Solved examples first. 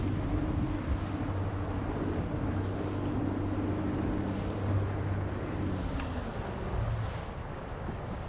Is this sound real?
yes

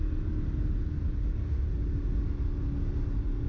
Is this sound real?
yes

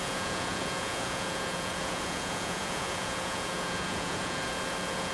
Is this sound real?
no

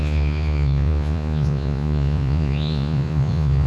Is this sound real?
no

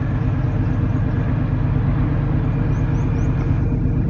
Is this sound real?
yes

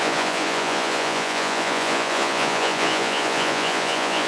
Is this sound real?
no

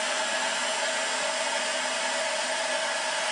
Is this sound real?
yes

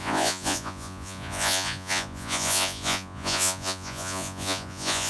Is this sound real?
no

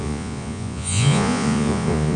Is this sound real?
no